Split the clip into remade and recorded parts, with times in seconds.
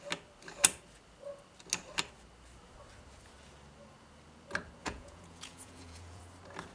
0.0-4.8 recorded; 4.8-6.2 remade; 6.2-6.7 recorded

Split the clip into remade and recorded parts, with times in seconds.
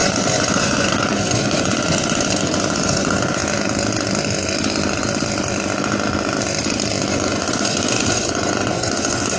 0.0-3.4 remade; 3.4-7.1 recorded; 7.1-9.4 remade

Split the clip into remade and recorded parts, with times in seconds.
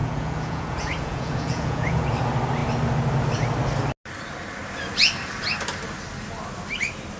0.0-2.1 remade; 2.1-7.2 recorded